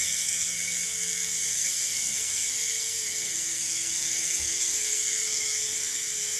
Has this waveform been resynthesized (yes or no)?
yes